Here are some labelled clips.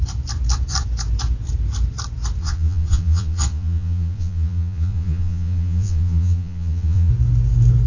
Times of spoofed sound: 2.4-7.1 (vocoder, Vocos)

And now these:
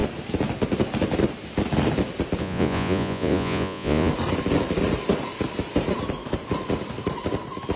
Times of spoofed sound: 2.4-4.1 (vocoder, Vocos)

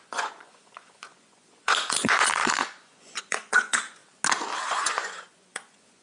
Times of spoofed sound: 0.0-4.0 (vocoder, Vocos); 4.6-6.0

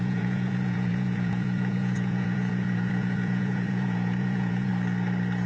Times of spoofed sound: 0.0-4.7 (vocoder, Vocos)